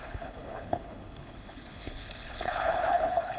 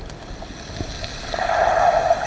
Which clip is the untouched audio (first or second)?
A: second